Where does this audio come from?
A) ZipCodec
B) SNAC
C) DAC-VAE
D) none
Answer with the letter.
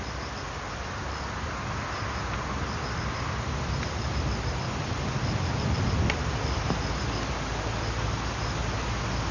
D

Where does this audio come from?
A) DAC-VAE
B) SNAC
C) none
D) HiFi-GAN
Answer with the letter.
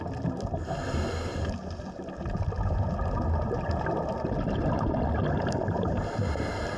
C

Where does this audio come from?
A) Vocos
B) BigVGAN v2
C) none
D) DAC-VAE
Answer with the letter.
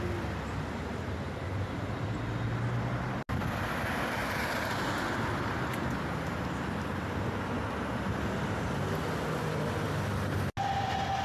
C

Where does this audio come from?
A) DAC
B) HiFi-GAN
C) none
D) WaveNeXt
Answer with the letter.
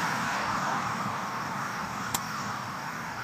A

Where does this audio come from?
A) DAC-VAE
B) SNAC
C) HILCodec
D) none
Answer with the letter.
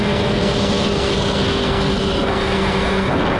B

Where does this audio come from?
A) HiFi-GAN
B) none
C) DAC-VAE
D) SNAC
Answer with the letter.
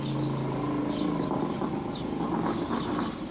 B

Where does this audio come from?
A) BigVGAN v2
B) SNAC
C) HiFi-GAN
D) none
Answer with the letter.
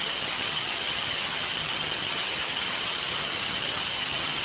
C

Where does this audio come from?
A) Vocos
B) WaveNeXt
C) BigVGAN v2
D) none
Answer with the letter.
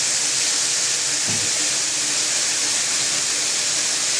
D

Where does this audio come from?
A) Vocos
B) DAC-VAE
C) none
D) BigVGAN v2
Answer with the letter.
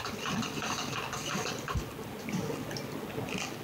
C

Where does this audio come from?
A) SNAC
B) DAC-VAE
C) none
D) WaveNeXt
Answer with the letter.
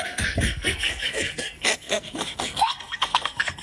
A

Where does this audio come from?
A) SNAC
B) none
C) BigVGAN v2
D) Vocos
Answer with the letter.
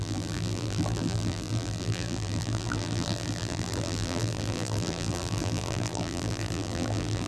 C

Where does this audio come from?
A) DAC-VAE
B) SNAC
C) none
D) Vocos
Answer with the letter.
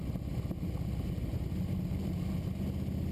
C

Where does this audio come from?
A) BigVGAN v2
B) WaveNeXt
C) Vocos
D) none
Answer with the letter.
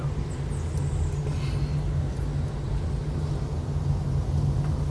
D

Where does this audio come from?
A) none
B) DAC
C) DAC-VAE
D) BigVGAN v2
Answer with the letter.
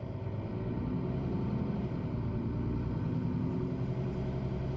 A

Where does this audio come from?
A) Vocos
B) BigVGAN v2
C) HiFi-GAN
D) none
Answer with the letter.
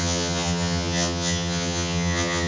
C